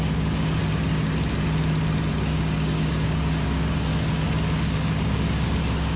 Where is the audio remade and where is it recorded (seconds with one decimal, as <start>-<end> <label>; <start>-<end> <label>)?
0.0-0.6 remade; 0.6-2.1 recorded; 2.1-3.9 remade; 3.9-4.6 recorded; 4.6-6.0 remade